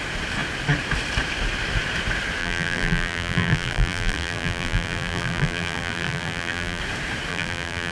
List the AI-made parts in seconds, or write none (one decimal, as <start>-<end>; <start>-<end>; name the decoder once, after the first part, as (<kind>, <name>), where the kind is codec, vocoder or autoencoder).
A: 2.4-6.8 (vocoder, BigVGAN v2); 7.3-7.9